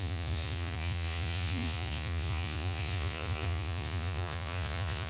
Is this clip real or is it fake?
fake